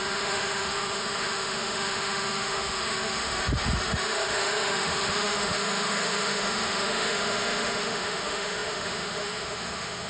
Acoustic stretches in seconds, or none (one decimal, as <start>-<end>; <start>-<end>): none